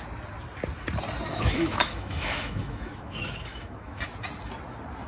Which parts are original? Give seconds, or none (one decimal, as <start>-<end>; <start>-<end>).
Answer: 0.0-1.3; 4.0-5.1

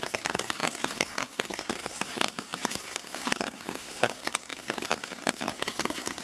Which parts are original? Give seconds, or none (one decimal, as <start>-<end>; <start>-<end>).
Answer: none

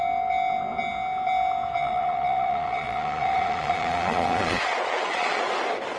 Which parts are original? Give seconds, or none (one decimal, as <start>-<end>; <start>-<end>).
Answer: 0.0-1.8; 5.4-6.0

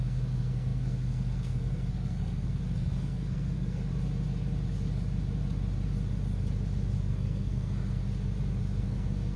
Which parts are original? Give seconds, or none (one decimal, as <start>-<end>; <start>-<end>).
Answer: 3.9-7.1; 8.0-8.8

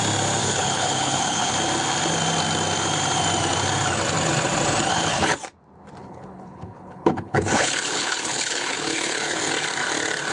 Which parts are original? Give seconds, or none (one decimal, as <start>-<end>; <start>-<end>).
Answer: 0.0-0.4; 1.5-4.9; 5.4-6.0; 9.5-10.3